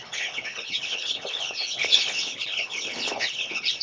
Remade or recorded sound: remade